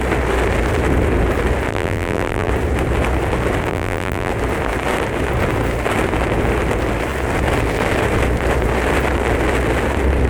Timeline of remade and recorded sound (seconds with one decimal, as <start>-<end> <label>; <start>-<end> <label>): 0.0-1.7 recorded; 1.7-2.5 remade; 2.5-3.7 recorded; 3.7-4.3 remade; 4.3-10.3 recorded